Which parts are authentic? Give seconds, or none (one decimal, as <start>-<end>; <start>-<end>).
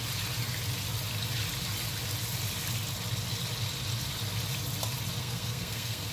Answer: 0.0-5.2